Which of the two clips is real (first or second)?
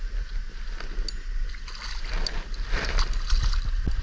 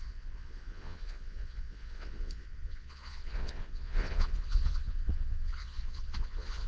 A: first